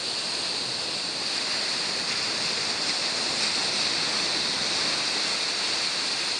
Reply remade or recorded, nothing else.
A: recorded